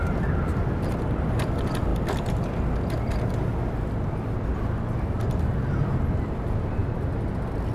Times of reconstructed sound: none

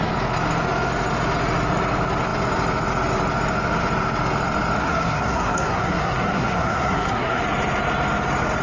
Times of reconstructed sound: 4.8-7.4 (codec, SNAC)

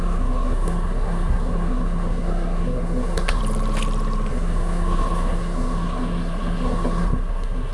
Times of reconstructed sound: 0.0-3.4 (codec, SNAC); 4.3-7.7

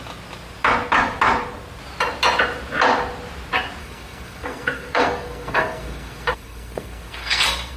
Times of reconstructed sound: 3.8-7.8 (codec, SNAC)